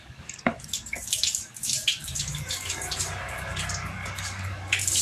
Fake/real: fake